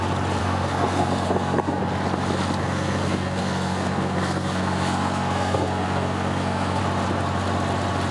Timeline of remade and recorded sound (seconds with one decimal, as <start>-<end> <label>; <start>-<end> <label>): 0.0-0.4 recorded; 0.4-1.8 remade; 1.8-2.6 recorded; 2.6-6.8 remade; 6.8-8.1 recorded